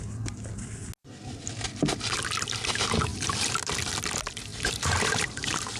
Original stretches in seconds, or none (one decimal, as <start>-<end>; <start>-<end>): 0.0-3.1; 3.7-4.5